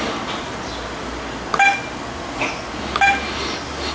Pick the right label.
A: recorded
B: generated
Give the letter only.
A